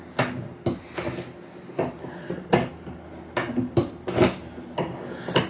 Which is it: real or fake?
real